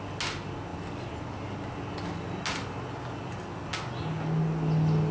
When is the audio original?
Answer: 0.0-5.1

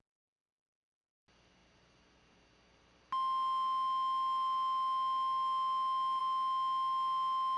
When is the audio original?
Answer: 0.0-7.6

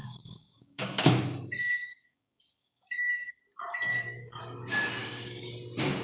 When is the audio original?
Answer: 1.2-1.9; 3.4-3.9; 4.4-5.0; 5.5-6.0